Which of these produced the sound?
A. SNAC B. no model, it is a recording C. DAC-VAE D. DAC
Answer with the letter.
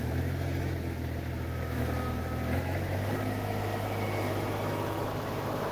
C